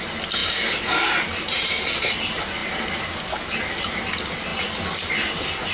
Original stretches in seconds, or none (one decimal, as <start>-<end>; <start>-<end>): 0.0-5.7